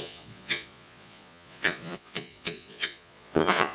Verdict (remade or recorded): remade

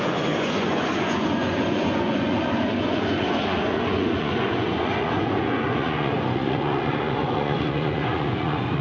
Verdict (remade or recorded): remade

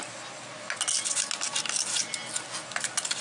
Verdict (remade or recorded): recorded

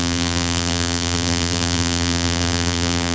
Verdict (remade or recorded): remade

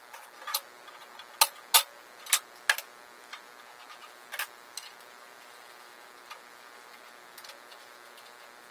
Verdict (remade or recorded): recorded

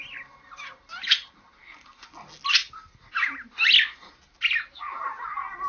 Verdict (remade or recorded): recorded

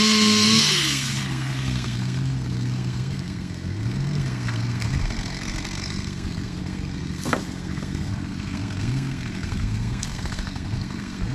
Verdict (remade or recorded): remade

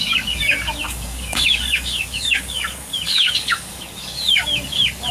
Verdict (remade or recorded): remade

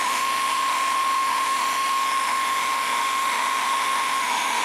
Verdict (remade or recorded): remade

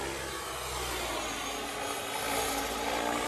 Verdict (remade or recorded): recorded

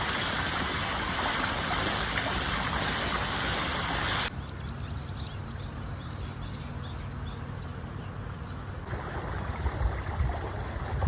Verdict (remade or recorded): recorded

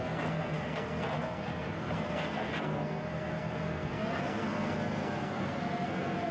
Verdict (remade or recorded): remade